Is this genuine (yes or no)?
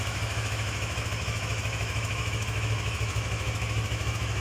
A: no